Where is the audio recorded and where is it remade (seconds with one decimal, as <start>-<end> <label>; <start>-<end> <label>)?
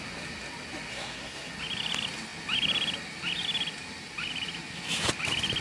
0.0-0.9 recorded; 0.9-1.5 remade; 1.5-5.6 recorded